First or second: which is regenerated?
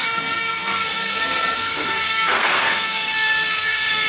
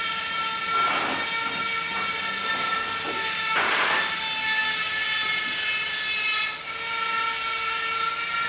first